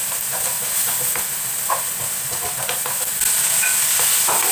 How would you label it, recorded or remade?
recorded